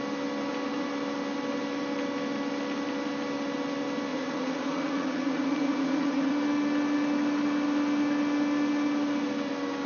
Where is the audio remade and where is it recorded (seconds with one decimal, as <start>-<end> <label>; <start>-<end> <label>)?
0.0-4.1 recorded; 4.1-6.3 remade; 6.3-9.9 recorded